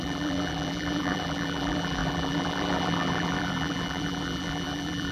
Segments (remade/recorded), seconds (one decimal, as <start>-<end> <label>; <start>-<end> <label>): 0.0-5.1 remade